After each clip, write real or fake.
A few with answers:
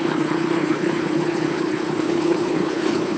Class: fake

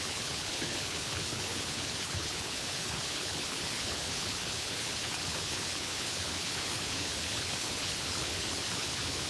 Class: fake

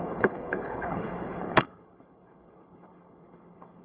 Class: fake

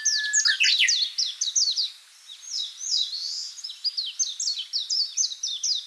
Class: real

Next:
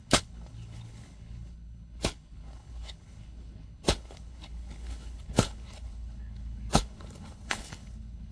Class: fake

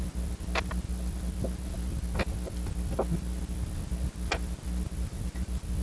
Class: real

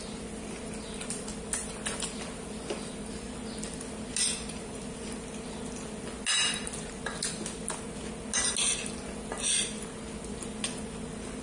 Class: real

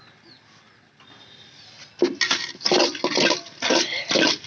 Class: real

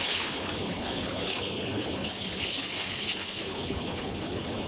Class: fake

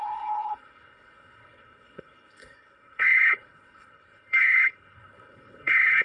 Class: fake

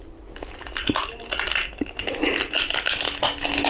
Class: real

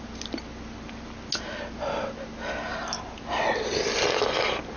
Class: real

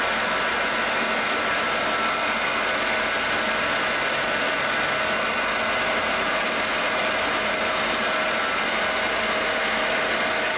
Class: real